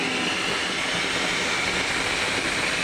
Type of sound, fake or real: real